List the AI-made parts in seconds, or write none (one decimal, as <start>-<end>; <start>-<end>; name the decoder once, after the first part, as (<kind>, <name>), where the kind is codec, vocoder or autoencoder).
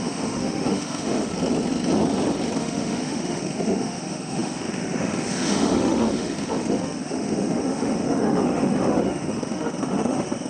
0.0-1.3 (autoencoder, DAC-VAE); 2.6-10.5